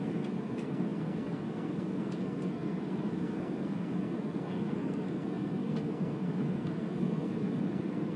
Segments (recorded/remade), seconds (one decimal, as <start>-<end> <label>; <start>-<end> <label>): 0.0-8.2 remade